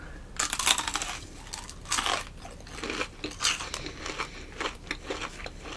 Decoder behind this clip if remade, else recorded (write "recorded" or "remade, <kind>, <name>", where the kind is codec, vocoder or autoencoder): recorded